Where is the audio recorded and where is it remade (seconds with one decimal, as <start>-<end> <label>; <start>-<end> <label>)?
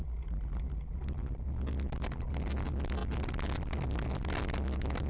0.0-5.1 recorded